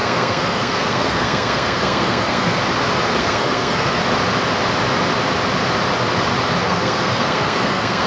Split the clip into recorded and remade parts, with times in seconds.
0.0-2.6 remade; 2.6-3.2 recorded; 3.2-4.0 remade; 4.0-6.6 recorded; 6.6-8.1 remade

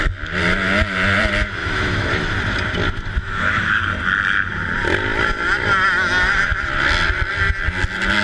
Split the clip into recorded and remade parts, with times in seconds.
0.0-1.6 recorded; 1.6-2.1 remade; 2.1-3.2 recorded; 3.2-3.8 remade; 3.8-8.2 recorded

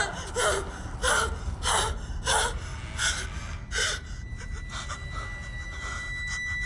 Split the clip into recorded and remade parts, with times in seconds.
0.0-6.7 recorded

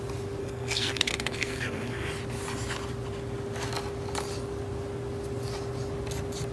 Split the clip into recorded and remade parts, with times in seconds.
0.0-0.4 recorded; 0.4-2.1 remade; 2.1-6.5 recorded

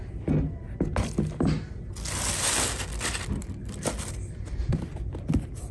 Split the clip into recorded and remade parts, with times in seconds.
0.0-3.4 recorded; 3.4-5.7 remade